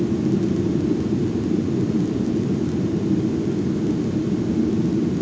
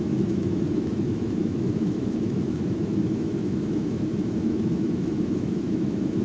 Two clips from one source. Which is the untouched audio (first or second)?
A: first